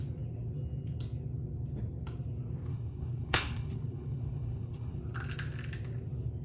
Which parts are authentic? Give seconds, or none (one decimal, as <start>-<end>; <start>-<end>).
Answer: 0.0-2.7; 5.0-6.4